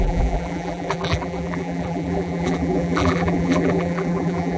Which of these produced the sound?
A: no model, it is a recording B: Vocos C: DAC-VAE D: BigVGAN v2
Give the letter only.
D